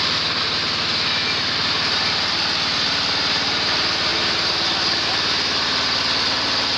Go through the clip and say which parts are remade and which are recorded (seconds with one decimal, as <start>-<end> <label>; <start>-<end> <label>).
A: 0.0-6.8 recorded